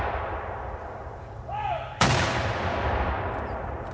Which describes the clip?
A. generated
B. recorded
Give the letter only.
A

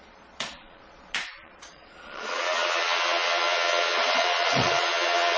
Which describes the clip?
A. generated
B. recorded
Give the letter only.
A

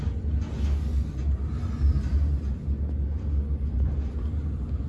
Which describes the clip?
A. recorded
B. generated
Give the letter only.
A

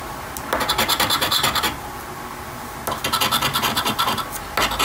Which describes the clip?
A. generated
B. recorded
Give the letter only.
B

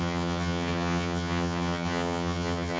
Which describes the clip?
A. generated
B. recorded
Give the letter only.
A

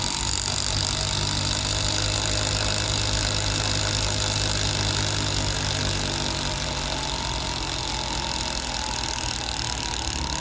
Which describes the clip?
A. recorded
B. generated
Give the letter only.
A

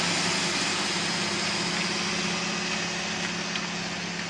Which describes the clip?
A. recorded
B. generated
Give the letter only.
A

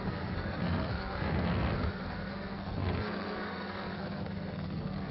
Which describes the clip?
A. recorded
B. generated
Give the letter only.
B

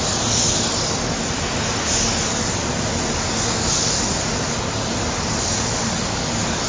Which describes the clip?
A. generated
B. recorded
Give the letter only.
B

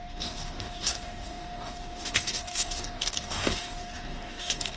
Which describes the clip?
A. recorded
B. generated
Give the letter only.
B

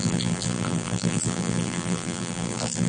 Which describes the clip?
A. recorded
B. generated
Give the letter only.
B